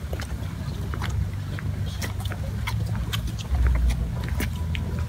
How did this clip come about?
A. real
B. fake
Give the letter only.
A